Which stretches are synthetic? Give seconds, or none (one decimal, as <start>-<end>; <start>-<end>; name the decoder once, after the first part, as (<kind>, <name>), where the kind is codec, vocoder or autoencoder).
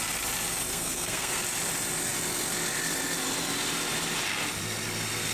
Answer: 0.7-1.4 (codec, SNAC)